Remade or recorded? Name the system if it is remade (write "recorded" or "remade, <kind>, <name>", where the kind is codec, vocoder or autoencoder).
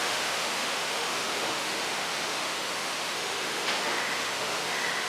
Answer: remade, autoencoder, DAC-VAE